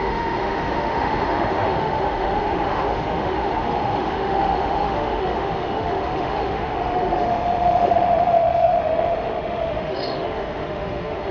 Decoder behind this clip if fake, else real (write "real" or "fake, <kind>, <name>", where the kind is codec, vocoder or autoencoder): fake, autoencoder, DAC-VAE